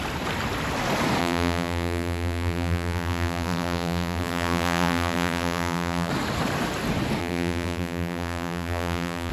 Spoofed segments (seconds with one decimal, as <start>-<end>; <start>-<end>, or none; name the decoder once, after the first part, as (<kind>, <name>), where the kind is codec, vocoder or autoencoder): 1.2-6.1 (vocoder, BigVGAN v2); 7.2-9.3